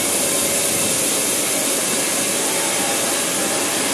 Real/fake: real